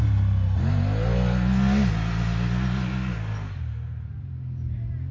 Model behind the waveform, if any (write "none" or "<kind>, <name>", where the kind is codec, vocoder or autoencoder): none